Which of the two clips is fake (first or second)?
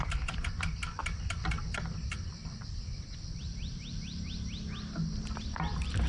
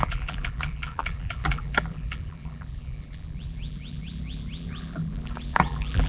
second